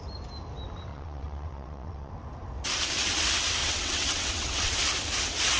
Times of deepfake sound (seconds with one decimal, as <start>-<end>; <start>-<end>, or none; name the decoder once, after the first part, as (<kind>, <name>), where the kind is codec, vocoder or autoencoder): 0.9-2.1 (vocoder, WaveNeXt); 3.6-4.7